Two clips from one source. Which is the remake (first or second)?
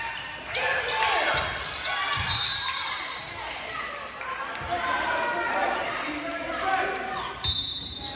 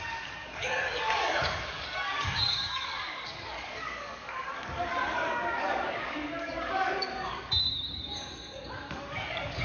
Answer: second